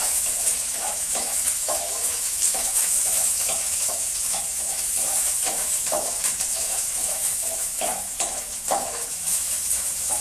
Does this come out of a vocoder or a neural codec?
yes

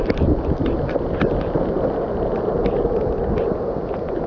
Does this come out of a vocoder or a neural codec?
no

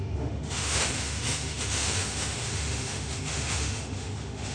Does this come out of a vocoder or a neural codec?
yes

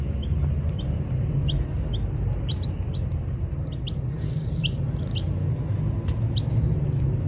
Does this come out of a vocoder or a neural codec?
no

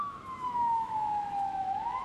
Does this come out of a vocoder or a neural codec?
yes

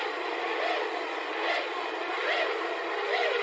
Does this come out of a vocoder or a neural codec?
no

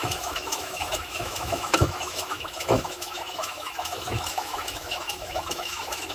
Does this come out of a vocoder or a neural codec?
yes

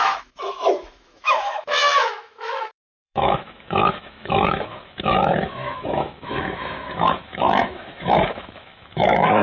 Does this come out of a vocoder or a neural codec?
yes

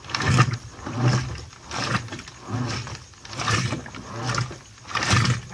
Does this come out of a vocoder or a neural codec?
no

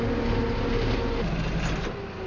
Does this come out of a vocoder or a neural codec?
no